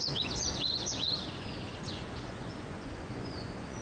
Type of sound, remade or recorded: remade